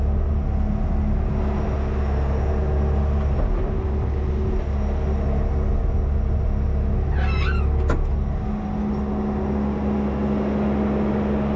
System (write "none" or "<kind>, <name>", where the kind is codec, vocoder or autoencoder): none